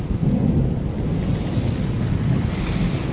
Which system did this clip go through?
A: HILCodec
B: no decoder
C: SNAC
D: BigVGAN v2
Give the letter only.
B